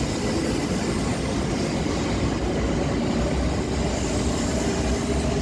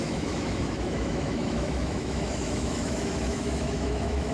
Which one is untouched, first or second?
first